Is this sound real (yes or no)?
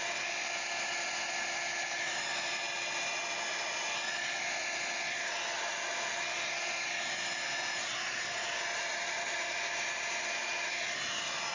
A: yes